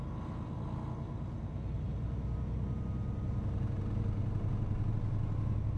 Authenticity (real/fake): real